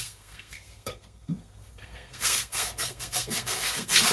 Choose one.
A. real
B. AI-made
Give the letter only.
B